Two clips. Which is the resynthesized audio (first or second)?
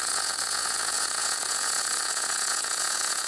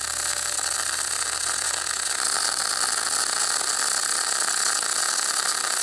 first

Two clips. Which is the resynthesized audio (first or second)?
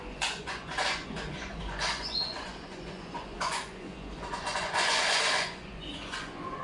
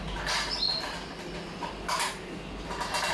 first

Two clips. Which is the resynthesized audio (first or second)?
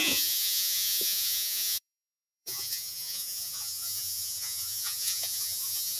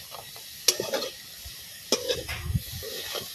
first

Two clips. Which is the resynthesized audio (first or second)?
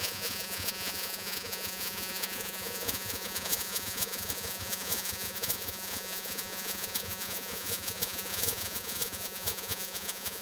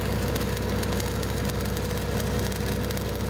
first